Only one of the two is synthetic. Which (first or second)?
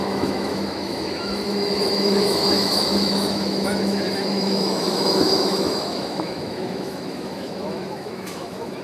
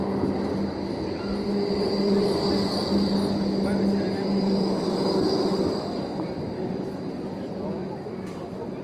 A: first